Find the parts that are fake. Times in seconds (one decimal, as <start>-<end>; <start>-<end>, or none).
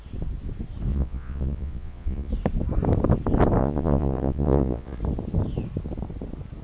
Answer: 0.9-2.3; 3.6-5.0